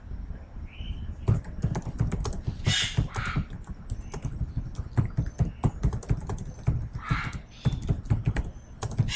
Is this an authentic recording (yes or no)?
yes